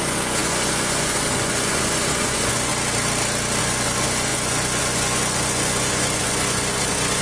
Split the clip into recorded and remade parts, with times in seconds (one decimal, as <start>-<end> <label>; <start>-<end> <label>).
0.0-2.7 remade; 2.7-3.6 recorded; 3.6-7.2 remade